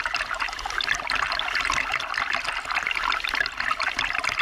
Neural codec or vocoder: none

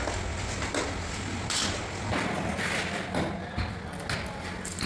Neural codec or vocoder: none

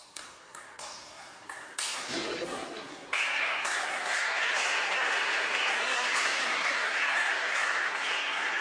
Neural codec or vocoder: codec, SNAC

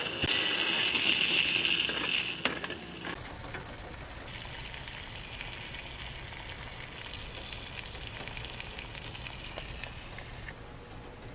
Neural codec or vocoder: none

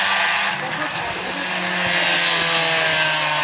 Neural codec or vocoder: none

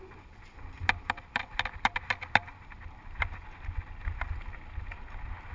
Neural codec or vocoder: none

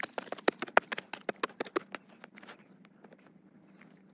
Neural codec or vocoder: none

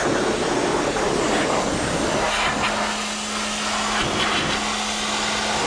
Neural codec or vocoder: none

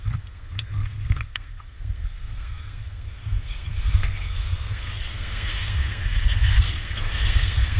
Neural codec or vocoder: codec, SNAC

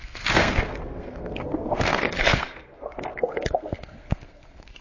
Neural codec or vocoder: codec, SNAC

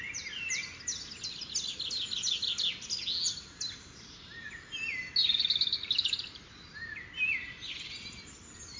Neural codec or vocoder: none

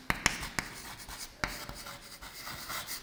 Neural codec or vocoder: none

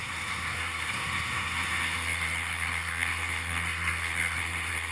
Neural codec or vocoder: codec, SNAC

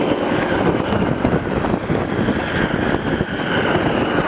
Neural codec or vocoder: none